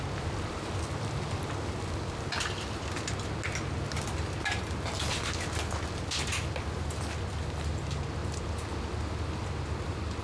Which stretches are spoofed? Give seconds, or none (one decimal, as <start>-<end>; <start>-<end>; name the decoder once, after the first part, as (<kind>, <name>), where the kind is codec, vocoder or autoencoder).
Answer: none